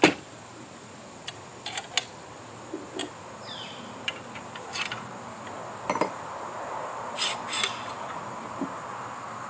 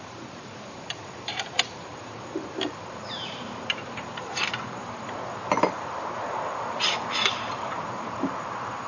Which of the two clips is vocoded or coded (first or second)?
second